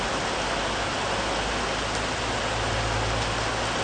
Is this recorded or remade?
recorded